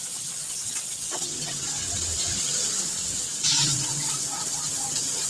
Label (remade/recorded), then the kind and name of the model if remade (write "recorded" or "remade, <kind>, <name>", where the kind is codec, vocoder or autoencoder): remade, vocoder, WaveNeXt